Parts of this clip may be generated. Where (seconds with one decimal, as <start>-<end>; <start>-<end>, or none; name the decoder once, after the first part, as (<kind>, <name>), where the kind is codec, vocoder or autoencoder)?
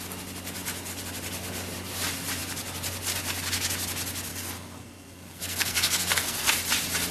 4.3-6.5 (codec, SNAC)